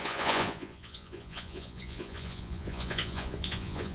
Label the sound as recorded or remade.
remade